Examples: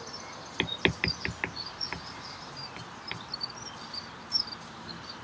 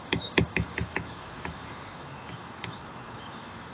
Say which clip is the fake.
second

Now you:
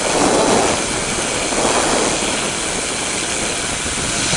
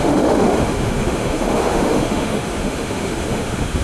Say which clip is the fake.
second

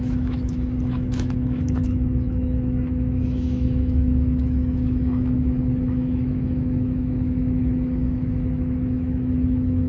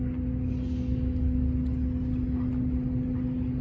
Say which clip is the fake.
first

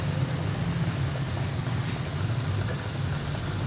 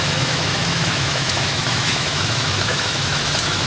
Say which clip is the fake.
second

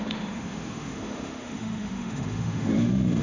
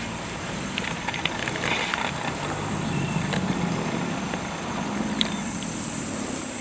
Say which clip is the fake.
first